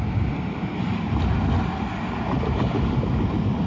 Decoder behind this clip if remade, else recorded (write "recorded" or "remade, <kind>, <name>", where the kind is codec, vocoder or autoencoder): recorded